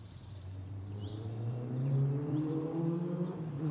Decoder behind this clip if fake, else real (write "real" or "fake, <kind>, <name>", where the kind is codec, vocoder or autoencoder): fake, vocoder, BigVGAN v2